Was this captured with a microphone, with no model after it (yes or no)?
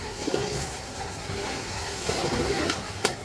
no